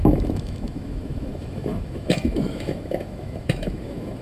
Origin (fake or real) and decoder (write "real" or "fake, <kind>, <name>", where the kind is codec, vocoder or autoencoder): fake, autoencoder, DAC-VAE